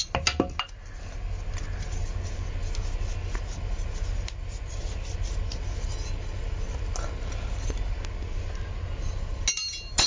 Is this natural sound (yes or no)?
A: yes